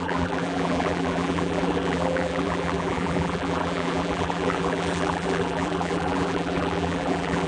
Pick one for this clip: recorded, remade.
remade